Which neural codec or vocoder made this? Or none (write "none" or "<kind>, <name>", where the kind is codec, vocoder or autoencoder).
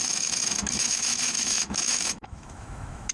autoencoder, DAC-VAE